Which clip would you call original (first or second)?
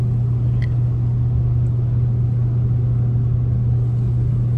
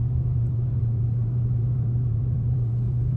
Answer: first